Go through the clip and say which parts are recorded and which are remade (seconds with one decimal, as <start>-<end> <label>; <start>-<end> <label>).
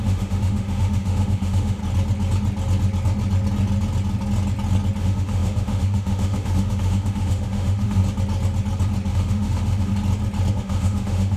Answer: 0.0-1.8 remade; 1.8-5.0 recorded; 5.0-8.0 remade; 8.0-9.1 recorded; 9.1-9.9 remade; 9.9-10.5 recorded; 10.5-11.4 remade